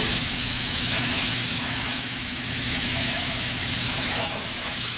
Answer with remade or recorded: remade